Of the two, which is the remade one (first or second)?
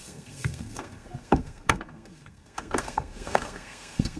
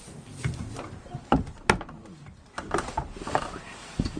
first